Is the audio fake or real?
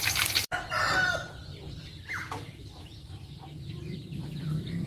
fake